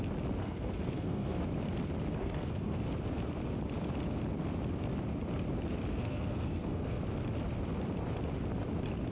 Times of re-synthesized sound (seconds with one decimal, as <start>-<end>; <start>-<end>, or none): 0.4-1.4; 2.2-2.8; 5.9-7.0